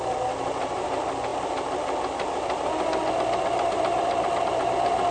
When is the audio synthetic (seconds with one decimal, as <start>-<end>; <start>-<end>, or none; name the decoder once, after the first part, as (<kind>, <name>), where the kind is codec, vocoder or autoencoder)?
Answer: none